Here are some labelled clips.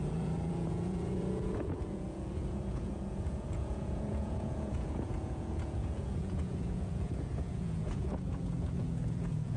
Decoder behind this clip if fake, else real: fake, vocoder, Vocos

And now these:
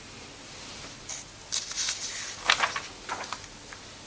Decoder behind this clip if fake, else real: real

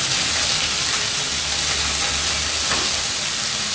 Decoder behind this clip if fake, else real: real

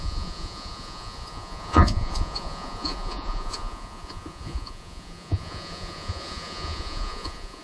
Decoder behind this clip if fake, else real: fake, vocoder, Vocos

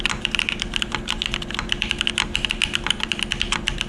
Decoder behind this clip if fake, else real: real